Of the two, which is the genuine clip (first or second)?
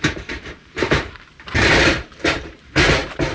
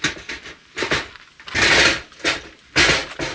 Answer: second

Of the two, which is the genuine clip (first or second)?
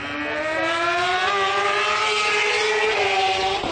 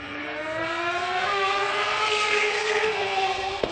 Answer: first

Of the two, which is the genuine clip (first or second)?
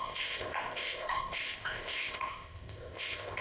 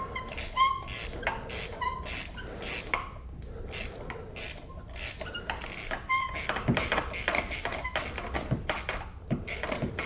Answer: second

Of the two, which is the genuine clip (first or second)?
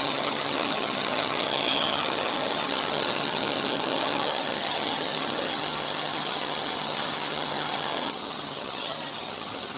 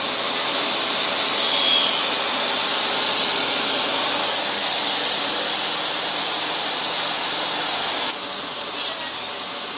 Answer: second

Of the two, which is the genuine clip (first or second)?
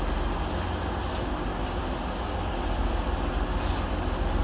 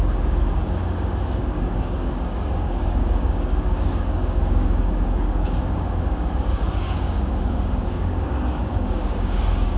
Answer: first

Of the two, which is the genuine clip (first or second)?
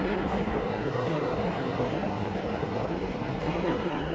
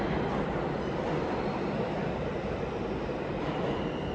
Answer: second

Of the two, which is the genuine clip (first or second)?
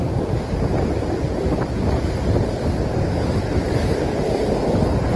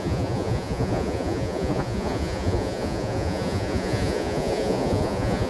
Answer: first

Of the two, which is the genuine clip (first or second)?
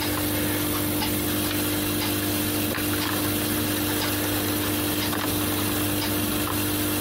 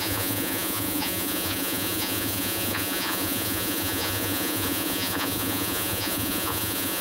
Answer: first